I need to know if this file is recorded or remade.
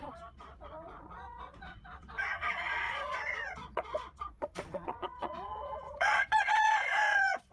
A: remade